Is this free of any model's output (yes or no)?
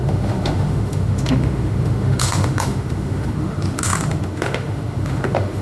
no